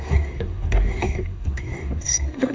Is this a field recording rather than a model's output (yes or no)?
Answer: no